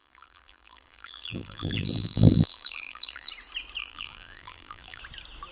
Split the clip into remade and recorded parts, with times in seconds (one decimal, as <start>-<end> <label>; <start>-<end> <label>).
0.0-3.3 remade; 3.3-3.8 recorded; 3.8-5.0 remade; 5.0-5.5 recorded